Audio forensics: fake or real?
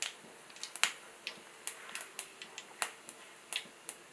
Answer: real